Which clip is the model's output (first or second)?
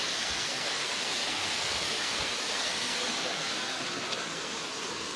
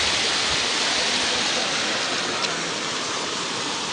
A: first